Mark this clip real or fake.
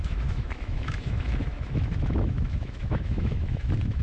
fake